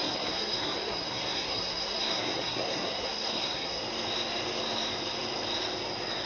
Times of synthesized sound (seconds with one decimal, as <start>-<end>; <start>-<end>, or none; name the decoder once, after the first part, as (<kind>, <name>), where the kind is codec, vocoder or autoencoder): 0.0-3.8 (codec, SNAC)

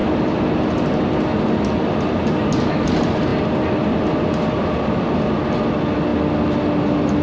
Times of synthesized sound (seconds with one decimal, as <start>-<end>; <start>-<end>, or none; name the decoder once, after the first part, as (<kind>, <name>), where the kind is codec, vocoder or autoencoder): none

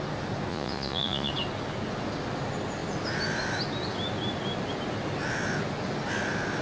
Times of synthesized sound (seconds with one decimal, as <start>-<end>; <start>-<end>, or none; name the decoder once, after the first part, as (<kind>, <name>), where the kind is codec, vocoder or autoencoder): 0.5-1.3 (vocoder, Vocos)

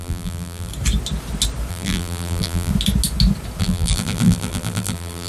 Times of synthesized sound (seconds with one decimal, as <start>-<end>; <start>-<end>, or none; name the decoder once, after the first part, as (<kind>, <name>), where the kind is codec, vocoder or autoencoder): 0.0-0.7 (vocoder, BigVGAN v2); 1.7-2.7; 3.6-5.3